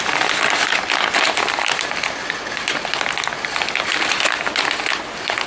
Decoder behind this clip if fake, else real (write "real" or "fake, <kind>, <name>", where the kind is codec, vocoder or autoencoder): real